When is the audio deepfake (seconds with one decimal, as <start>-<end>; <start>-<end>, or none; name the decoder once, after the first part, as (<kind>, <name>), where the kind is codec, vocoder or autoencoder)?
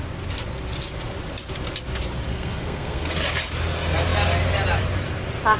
2.3-3.1 (codec, SNAC)